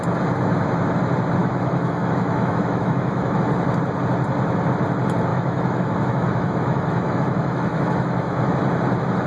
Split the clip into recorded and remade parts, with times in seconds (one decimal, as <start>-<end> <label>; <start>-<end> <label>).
0.0-1.4 recorded; 1.4-3.4 remade; 3.4-5.3 recorded; 5.3-8.4 remade; 8.4-9.3 recorded